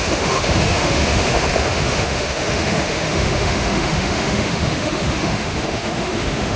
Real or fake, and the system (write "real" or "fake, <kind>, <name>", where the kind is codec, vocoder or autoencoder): fake, autoencoder, DAC-VAE